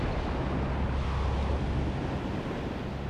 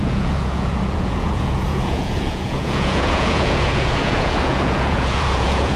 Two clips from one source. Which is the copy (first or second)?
second